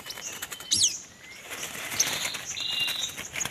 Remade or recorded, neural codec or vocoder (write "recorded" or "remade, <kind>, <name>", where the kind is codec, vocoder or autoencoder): recorded